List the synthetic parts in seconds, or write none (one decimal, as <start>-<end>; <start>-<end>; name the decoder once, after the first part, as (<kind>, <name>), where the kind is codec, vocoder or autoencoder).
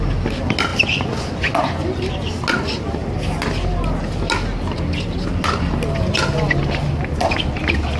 none